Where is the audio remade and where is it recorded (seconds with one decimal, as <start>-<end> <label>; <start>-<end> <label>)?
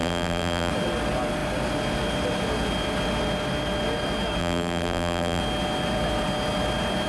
0.0-0.7 remade; 0.7-4.4 recorded; 4.4-5.4 remade; 5.4-7.1 recorded